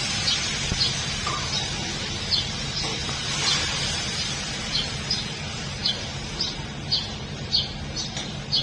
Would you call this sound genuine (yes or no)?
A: no